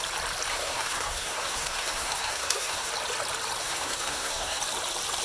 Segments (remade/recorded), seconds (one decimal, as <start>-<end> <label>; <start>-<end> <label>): 0.0-0.5 recorded; 0.5-2.9 remade; 2.9-3.6 recorded; 3.6-4.6 remade; 4.6-5.2 recorded